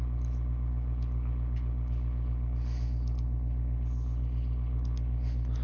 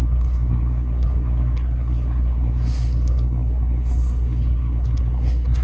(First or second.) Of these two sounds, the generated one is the second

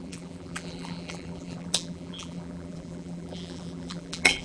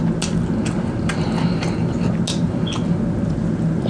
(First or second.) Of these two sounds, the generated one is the first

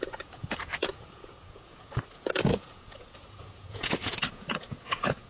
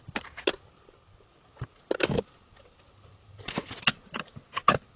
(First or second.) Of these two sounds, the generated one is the first